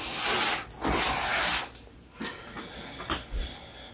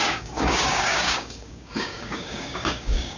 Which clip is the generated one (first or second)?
second